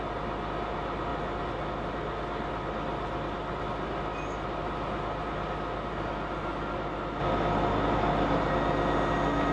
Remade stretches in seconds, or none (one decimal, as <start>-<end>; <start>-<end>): none